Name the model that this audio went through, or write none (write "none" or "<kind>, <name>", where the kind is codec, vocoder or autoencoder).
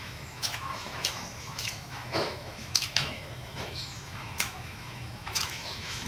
autoencoder, DAC-VAE